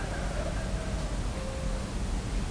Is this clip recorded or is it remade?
recorded